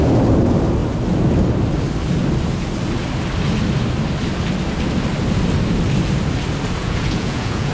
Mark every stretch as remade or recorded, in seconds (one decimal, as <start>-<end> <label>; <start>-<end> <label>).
0.0-6.8 recorded; 6.8-7.7 remade